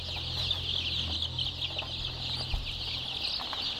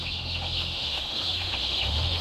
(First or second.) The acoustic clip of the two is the first